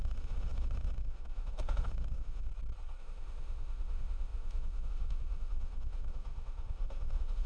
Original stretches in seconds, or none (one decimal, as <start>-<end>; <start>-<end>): 2.5-3.0